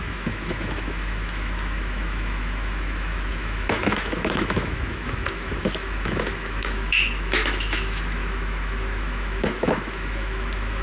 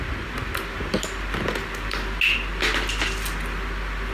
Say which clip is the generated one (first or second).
first